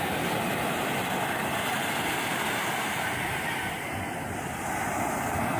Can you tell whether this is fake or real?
real